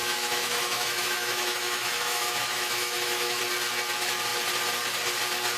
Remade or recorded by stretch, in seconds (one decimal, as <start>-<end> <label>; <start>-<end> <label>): 0.0-3.4 remade; 3.4-5.6 recorded